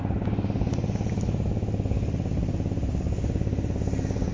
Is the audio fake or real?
real